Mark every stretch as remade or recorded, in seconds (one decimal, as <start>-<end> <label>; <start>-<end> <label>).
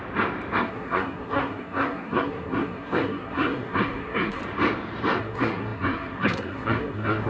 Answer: 0.0-0.6 recorded; 0.6-4.4 remade; 4.4-5.2 recorded; 5.2-7.3 remade